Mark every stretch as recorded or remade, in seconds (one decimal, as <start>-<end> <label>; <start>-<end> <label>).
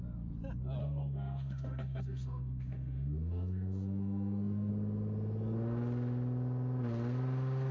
0.0-0.8 recorded; 0.8-4.7 remade; 4.7-7.7 recorded